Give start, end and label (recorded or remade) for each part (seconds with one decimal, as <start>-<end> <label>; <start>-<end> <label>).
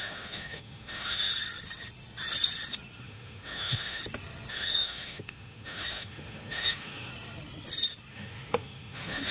0.0-1.3 remade; 1.3-3.0 recorded; 3.0-4.0 remade; 4.0-4.5 recorded; 4.5-7.1 remade; 7.1-8.1 recorded; 8.1-9.3 remade